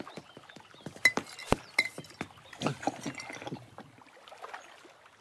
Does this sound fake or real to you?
real